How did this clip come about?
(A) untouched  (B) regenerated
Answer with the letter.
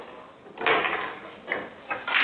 A